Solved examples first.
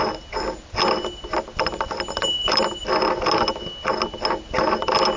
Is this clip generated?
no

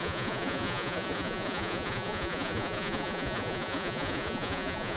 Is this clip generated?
yes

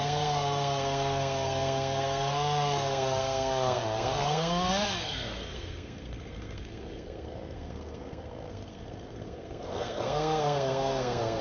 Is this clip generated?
yes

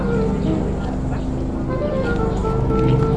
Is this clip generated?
no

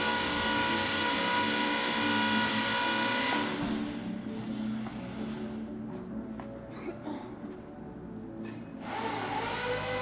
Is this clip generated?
no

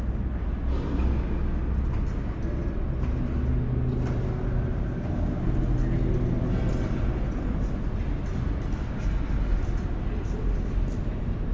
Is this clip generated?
no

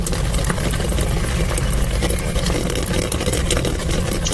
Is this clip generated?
no